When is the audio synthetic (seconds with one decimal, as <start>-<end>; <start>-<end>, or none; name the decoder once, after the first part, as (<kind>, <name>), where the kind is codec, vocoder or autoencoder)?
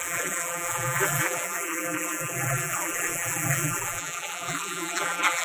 0.0-5.4 (vocoder, BigVGAN v2)